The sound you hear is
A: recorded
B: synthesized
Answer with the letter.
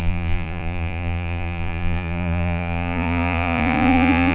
B